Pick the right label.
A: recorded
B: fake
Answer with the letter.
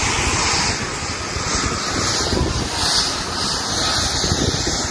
A